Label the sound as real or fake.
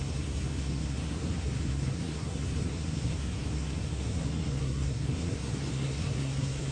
fake